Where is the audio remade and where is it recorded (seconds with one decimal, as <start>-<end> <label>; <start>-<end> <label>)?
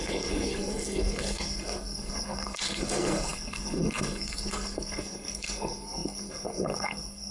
0.0-7.3 remade